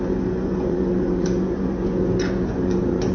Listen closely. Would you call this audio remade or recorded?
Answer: remade